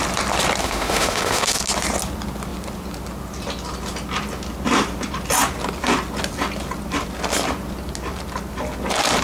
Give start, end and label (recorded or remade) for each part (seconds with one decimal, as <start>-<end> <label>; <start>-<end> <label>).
0.0-0.6 recorded; 0.6-1.6 remade; 1.6-9.2 recorded